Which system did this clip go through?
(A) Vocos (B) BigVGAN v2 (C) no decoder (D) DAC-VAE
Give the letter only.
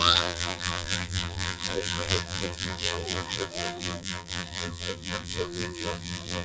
B